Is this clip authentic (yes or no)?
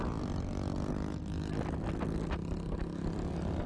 yes